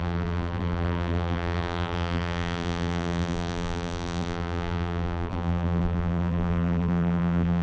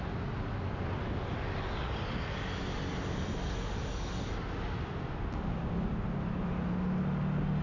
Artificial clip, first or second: first